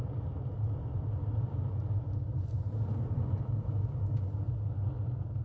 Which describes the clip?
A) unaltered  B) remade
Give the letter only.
A